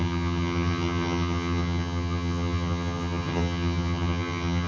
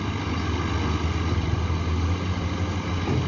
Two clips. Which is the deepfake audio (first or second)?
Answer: first